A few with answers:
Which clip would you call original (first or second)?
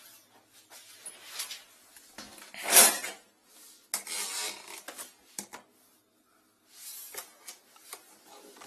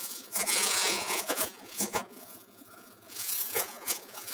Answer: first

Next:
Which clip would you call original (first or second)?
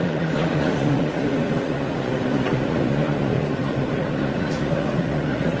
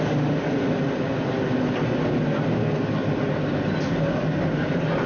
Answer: second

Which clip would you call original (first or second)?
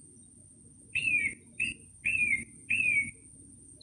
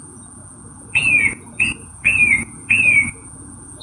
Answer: first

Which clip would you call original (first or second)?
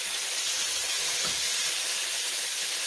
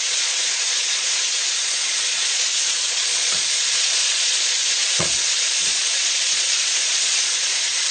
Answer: first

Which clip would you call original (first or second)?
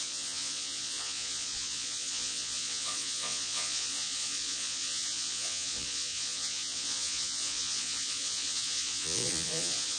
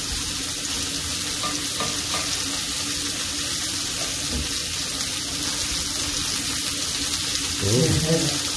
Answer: second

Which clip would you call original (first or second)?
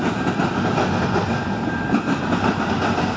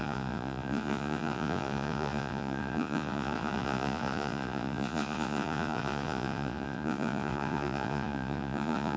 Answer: first